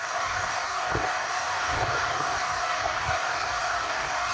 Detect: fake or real fake